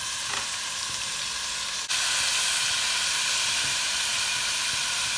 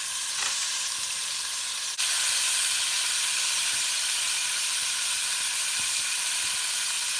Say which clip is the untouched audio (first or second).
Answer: first